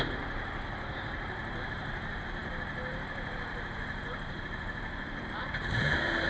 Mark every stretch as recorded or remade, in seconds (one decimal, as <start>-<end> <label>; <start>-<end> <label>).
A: 0.0-6.3 remade